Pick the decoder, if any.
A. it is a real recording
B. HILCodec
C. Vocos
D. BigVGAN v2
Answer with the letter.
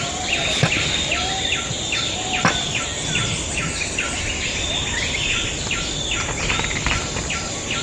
A